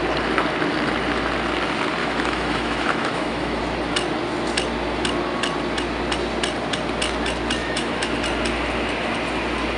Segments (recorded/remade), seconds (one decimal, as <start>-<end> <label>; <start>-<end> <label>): 0.0-2.0 recorded; 2.0-3.6 remade; 3.6-7.6 recorded; 7.6-8.1 remade; 8.1-9.8 recorded